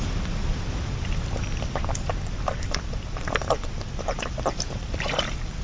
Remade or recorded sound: remade